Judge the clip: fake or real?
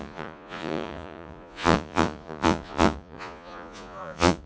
fake